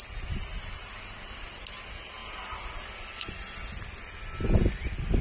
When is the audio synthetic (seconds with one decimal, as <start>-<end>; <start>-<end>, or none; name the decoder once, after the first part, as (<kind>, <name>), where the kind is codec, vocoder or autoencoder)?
none